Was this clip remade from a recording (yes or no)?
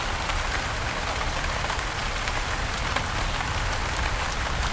no